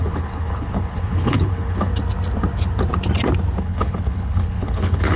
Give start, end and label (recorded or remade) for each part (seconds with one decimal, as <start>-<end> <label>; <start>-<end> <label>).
0.0-1.9 remade; 1.9-3.6 recorded; 3.6-5.2 remade